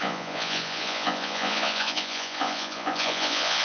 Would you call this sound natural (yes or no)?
no